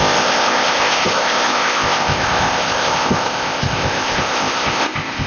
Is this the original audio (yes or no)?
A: no